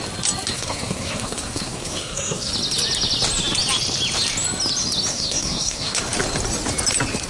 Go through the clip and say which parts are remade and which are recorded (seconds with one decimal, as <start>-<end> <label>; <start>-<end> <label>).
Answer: 0.0-0.5 recorded; 0.5-2.5 remade; 2.5-5.1 recorded; 5.1-6.0 remade; 6.0-7.3 recorded